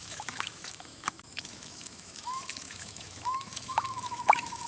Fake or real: fake